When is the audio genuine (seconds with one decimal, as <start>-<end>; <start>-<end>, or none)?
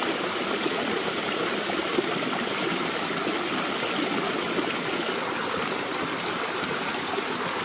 3.0-7.6